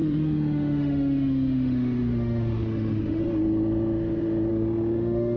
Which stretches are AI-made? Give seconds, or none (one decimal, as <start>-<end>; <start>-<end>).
0.0-3.2; 4.5-5.4

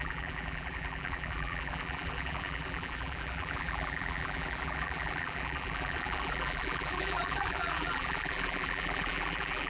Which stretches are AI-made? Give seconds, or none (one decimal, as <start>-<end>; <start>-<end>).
0.0-9.7